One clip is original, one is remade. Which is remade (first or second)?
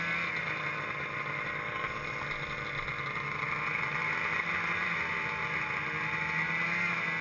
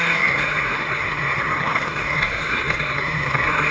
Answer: second